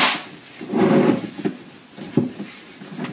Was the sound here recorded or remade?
recorded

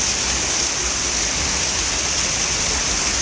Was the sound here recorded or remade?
recorded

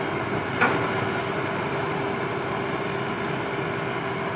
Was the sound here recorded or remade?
recorded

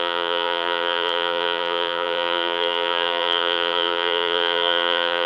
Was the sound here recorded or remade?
remade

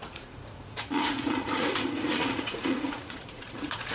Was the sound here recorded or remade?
remade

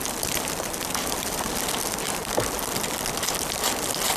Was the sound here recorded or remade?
recorded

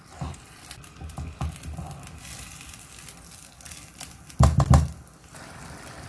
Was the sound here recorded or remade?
recorded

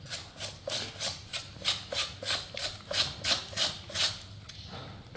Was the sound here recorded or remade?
recorded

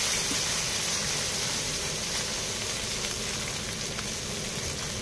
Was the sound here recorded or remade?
recorded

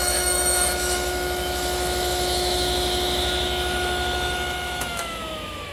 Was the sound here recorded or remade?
remade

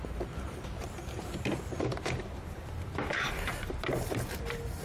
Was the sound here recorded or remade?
remade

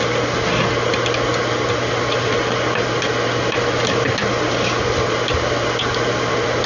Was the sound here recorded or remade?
recorded